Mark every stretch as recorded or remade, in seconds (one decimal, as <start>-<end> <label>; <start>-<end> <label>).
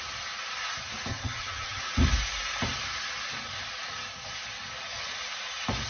0.0-1.1 recorded; 1.1-1.8 remade; 1.8-5.9 recorded